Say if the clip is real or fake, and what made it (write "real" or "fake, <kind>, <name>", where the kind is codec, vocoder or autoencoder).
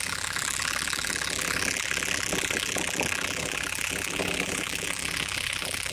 fake, vocoder, BigVGAN v2